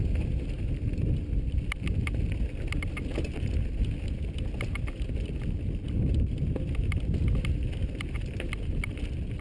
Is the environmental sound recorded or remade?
recorded